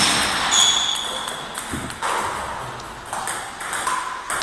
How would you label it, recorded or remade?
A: recorded